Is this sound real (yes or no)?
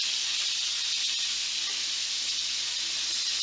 yes